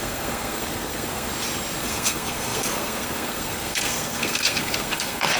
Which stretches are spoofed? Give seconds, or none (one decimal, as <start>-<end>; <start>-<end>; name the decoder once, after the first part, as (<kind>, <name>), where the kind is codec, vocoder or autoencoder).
0.0-1.3 (codec, SNAC); 1.8-5.4